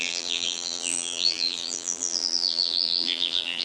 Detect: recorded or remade remade